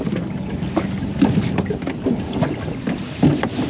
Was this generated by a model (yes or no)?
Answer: no